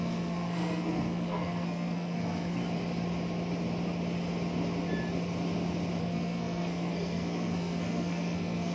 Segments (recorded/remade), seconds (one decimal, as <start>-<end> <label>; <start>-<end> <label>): 0.0-2.6 remade; 2.6-6.0 recorded; 6.0-8.7 remade